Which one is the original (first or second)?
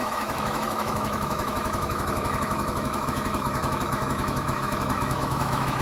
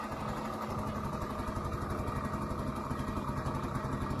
second